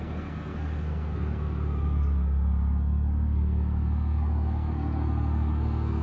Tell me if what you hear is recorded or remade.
remade